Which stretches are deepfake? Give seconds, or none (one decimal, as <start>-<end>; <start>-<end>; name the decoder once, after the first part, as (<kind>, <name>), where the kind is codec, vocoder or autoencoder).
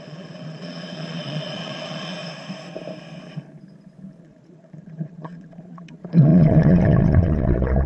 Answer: 0.0-2.2 (vocoder, Vocos); 4.2-7.9